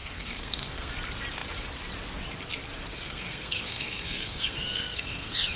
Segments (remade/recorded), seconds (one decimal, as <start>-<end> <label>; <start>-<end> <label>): 0.0-0.9 remade; 0.9-2.9 recorded; 2.9-5.6 remade